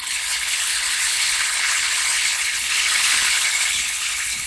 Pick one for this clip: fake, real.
fake